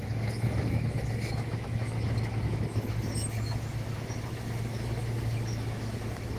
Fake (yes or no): yes